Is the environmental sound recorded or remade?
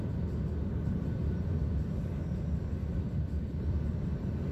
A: recorded